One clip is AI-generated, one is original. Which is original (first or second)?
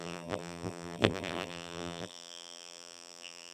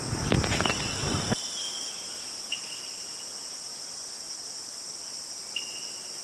second